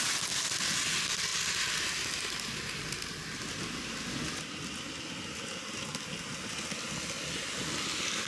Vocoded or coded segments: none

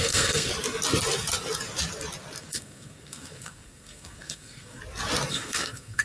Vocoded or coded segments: 0.0-0.5 (codec, SNAC); 2.4-4.8; 5.3-6.0

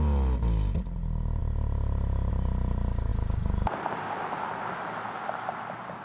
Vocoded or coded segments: none

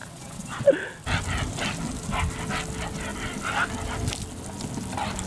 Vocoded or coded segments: 0.0-0.6 (vocoder, Vocos)

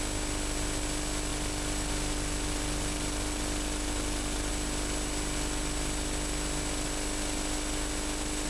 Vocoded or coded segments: 1.3-4.5 (vocoder, BigVGAN v2)

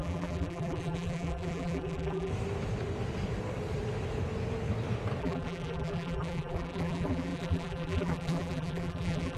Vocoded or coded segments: 0.0-2.3 (vocoder, BigVGAN v2); 5.2-9.4

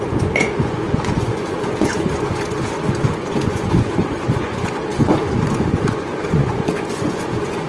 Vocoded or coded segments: 0.0-7.7 (vocoder, Vocos)

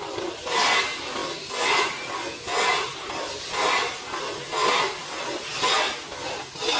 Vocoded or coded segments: none